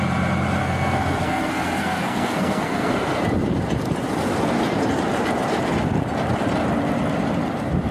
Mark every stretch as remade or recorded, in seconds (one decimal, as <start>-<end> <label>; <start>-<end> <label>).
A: 0.0-0.6 recorded; 0.6-3.2 remade; 3.2-7.9 recorded